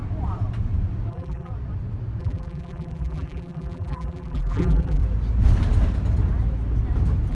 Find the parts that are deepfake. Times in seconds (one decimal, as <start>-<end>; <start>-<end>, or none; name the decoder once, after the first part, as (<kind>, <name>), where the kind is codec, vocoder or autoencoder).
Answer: 1.1-1.5 (vocoder, BigVGAN v2); 2.2-5.0